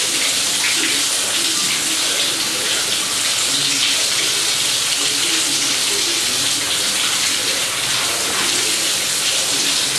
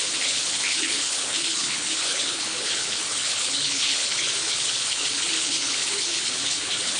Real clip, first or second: first